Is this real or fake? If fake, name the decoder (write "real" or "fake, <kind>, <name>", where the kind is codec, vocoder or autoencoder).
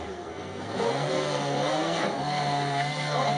fake, codec, SNAC